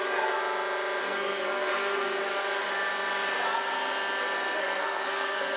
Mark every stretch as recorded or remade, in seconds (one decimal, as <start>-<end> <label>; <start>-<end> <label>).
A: 0.0-0.4 remade; 0.4-1.0 recorded; 1.0-2.2 remade; 2.2-4.6 recorded; 4.6-5.6 remade